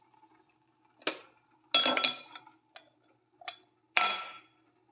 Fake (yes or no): no